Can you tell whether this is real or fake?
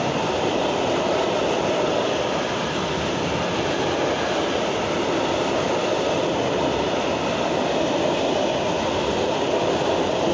real